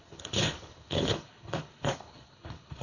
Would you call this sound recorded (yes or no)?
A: no